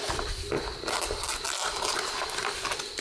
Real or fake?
real